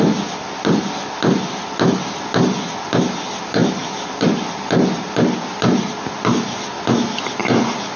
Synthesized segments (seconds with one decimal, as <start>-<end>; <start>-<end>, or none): none